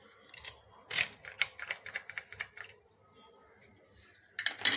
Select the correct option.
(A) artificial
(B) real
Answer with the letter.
B